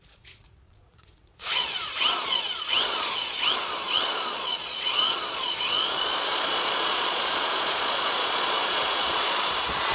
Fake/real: fake